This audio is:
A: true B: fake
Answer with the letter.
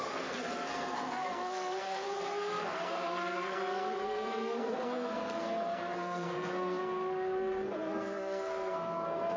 B